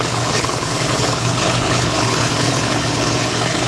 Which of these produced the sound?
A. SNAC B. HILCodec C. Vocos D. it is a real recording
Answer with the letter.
B